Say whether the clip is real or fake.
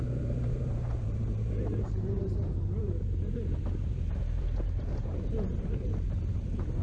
fake